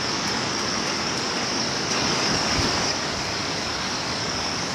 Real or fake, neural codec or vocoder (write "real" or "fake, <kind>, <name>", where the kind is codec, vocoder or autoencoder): fake, codec, DAC